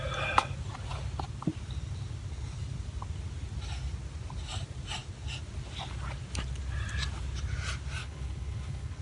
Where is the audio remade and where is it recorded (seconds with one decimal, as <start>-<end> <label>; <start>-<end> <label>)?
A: 0.0-8.0 recorded; 8.0-9.0 remade